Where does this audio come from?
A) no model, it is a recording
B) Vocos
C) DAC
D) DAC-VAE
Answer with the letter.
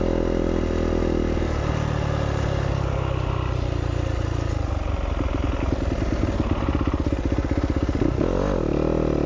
A